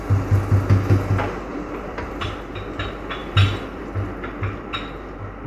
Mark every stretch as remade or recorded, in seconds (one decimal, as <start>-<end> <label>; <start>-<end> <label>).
0.0-1.5 recorded; 1.5-2.1 remade; 2.1-3.2 recorded; 3.2-3.8 remade; 3.8-5.5 recorded